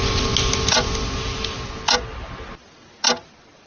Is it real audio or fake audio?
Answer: real